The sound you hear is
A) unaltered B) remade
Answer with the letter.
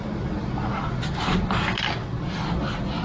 A